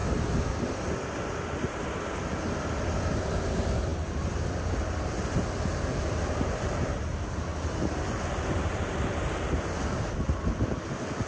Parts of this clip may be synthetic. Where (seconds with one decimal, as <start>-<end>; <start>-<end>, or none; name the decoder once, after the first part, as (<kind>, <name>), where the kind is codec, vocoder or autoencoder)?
3.2-3.9 (vocoder, BigVGAN v2); 5.0-11.3